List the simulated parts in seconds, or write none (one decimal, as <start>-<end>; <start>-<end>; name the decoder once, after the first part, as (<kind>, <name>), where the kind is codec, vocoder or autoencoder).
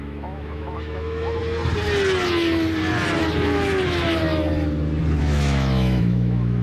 0.0-1.4 (autoencoder, DAC-VAE); 5.2-6.6